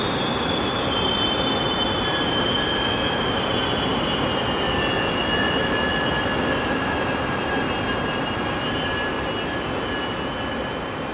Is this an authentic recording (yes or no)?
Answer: yes